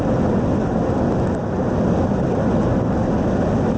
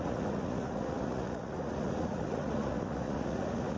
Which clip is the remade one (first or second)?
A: second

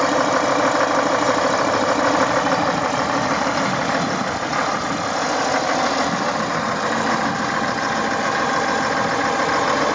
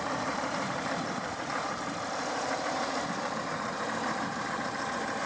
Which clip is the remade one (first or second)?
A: second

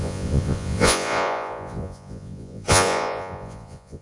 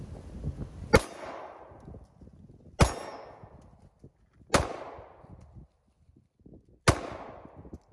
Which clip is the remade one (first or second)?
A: first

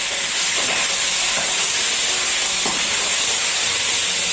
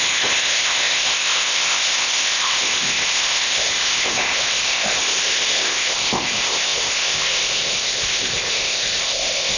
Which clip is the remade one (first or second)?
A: second